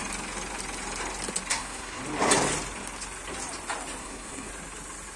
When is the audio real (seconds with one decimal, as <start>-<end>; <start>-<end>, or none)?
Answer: 0.0-1.5; 2.0-4.0; 4.5-5.2